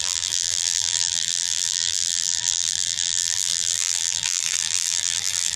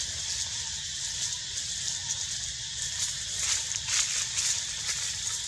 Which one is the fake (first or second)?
first